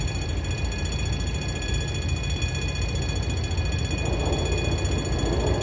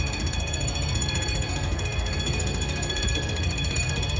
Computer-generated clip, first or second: second